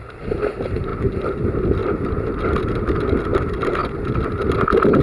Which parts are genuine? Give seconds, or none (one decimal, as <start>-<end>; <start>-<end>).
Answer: 0.0-5.0